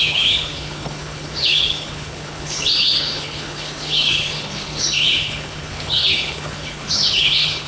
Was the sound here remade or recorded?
remade